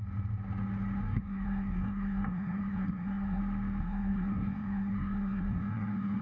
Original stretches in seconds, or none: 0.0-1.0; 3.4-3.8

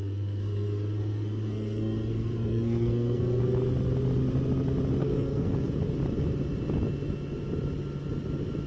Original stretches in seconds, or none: 3.4-5.0; 5.7-8.7

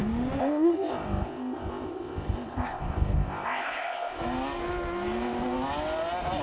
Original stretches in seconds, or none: 0.0-0.4; 4.2-6.4

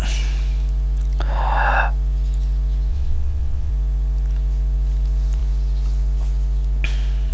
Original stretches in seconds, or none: 0.0-2.9; 3.7-7.3